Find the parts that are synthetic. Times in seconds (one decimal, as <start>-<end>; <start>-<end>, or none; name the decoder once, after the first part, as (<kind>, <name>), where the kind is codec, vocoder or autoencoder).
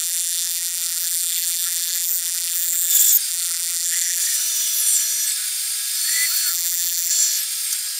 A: 0.0-2.9 (vocoder, BigVGAN v2); 3.3-4.2; 6.5-7.1